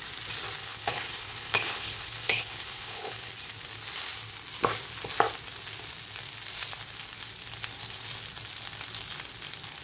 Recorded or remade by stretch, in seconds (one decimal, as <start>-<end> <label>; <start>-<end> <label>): 0.0-0.6 recorded; 0.6-3.3 remade; 3.3-9.8 recorded

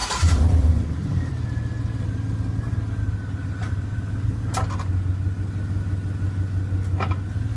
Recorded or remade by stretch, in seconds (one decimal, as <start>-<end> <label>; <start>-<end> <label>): 0.0-1.3 remade; 1.3-3.6 recorded; 3.6-4.6 remade; 4.6-7.6 recorded

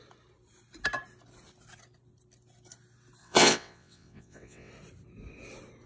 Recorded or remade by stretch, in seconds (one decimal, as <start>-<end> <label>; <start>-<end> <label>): 0.0-3.2 recorded; 3.2-4.7 remade; 4.7-5.9 recorded